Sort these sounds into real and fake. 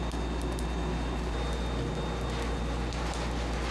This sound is real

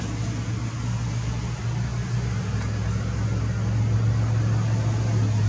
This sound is real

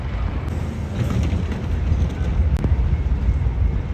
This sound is real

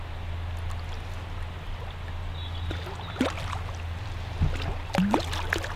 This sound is real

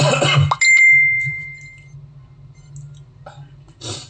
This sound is real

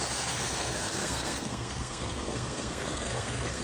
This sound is fake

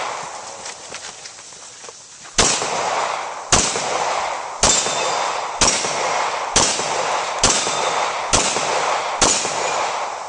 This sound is real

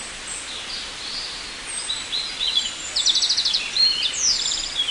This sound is real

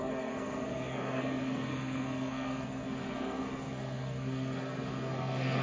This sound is fake